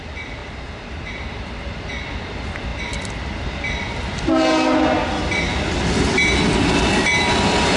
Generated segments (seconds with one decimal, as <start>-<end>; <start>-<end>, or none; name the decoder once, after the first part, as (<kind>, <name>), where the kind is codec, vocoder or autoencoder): 0.4-1.5 (vocoder, BigVGAN v2)